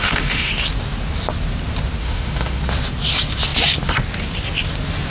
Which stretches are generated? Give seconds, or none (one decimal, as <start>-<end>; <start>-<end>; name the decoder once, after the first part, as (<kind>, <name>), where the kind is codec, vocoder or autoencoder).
0.0-0.5 (autoencoder, DAC-VAE); 2.0-2.6